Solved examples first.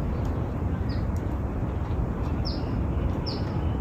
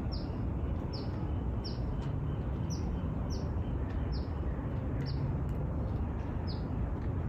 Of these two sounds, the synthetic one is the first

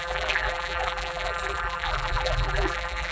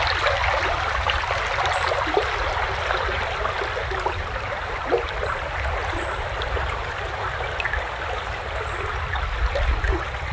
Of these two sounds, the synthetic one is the first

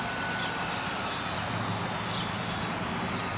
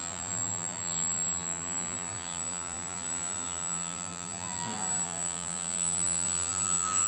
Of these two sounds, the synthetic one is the second